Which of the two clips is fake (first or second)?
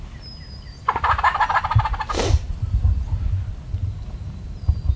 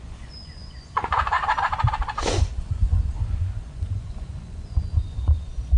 second